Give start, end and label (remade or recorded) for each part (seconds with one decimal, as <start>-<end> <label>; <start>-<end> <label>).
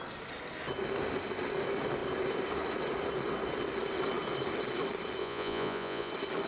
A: 0.0-5.2 recorded; 5.2-6.1 remade; 6.1-6.5 recorded